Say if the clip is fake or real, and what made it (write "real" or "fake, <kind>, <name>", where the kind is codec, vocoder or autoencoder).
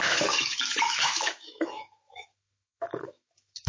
fake, autoencoder, DAC-VAE